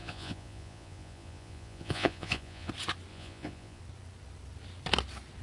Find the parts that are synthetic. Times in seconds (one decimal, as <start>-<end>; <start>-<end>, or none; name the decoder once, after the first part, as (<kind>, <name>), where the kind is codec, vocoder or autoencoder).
0.0-2.7 (vocoder, Vocos); 3.1-3.8